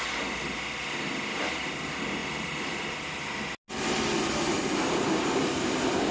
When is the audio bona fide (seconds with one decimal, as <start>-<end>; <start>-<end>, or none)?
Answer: 0.0-6.1